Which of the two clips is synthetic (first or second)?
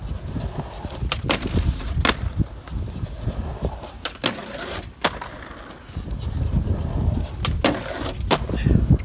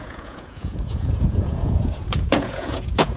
second